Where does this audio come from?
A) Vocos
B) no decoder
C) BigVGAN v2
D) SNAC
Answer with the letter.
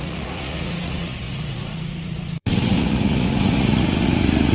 A